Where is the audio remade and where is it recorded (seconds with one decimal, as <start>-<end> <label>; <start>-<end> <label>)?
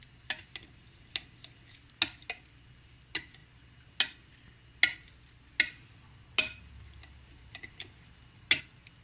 0.0-9.0 recorded